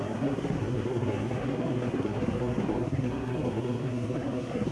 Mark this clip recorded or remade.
remade